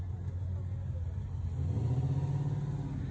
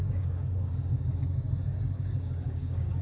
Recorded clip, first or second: first